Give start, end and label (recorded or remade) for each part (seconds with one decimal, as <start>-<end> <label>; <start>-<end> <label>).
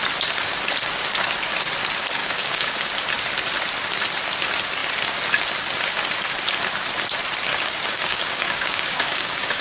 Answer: 0.0-2.2 recorded; 2.2-2.9 remade; 2.9-7.5 recorded; 7.5-9.6 remade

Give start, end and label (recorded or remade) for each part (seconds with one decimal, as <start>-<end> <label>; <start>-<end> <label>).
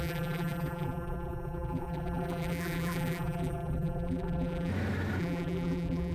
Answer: 0.0-4.7 remade; 4.7-5.2 recorded; 5.2-6.1 remade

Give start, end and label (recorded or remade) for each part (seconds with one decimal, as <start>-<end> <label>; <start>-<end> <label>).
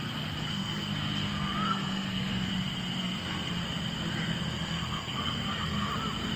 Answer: 0.0-0.5 recorded; 0.5-2.5 remade; 2.5-3.0 recorded; 3.0-3.5 remade; 3.5-4.4 recorded; 4.4-5.9 remade; 5.9-6.4 recorded